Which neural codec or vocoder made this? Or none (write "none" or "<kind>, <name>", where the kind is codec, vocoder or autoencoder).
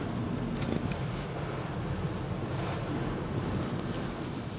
none